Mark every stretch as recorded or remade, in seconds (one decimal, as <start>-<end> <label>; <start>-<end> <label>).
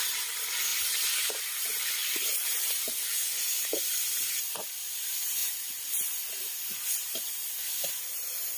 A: 0.0-0.7 remade; 0.7-1.4 recorded; 1.4-5.4 remade; 5.4-7.3 recorded; 7.3-8.6 remade